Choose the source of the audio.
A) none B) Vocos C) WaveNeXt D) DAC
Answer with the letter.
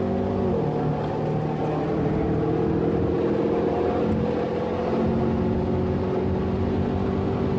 A